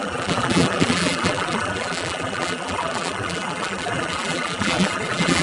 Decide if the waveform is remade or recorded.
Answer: remade